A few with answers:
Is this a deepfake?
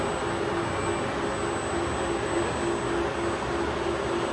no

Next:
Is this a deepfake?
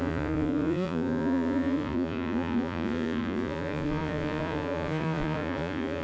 yes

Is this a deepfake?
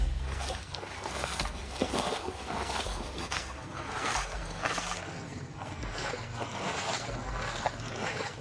yes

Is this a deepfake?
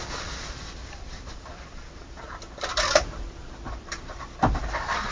yes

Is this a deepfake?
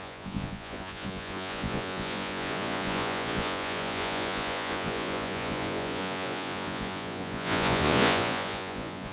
yes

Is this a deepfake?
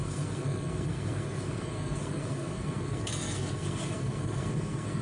yes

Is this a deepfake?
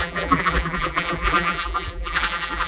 yes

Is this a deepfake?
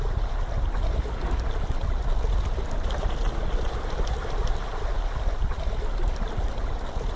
no